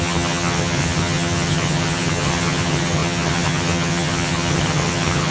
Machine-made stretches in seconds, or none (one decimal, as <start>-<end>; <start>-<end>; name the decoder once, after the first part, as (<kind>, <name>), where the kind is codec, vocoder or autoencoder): 0.0-5.3 (vocoder, HiFi-GAN)